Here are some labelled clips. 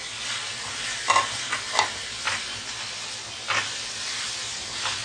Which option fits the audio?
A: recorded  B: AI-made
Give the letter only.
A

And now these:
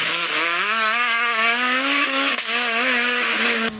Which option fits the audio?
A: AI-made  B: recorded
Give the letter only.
A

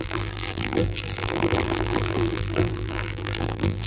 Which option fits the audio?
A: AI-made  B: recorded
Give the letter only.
A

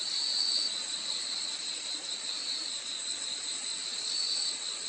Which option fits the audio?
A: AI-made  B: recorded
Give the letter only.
A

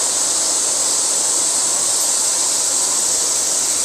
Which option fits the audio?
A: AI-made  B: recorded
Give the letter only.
A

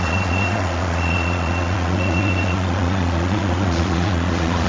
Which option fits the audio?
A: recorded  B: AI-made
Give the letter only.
B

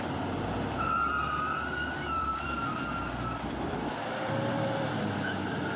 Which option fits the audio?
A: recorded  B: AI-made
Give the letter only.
B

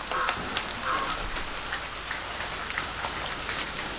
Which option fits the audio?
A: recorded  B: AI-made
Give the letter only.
A